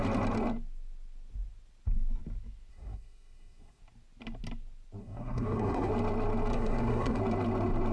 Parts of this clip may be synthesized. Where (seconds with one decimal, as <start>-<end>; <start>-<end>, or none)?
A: 2.7-3.8; 5.0-5.9; 6.5-7.2